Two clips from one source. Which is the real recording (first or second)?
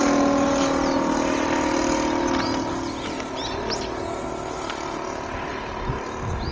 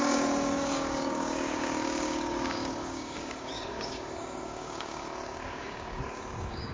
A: first